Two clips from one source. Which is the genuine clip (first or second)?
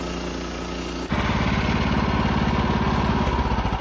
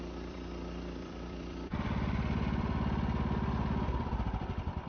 first